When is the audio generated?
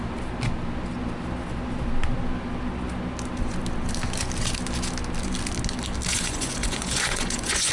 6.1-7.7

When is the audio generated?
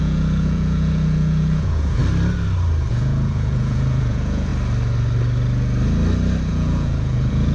0.0-2.0; 2.9-4.5; 6.5-7.5